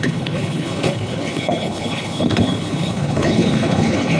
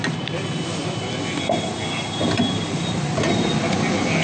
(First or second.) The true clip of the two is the second